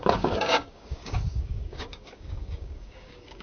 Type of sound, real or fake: fake